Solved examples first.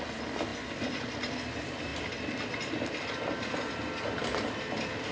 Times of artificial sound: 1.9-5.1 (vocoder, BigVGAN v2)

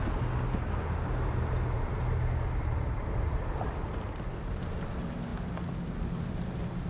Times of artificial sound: none